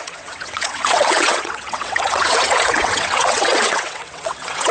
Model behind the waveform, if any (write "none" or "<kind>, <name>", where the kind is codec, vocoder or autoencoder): vocoder, WaveNeXt